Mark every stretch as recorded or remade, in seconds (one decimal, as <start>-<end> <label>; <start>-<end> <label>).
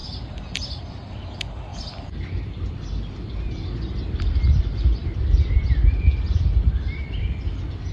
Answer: 0.0-1.7 recorded; 1.7-3.1 remade; 3.1-7.9 recorded